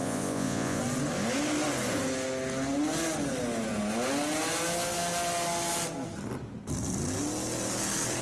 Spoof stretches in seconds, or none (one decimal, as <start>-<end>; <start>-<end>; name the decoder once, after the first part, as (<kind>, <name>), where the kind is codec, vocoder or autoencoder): 0.0-0.8 (vocoder, Vocos)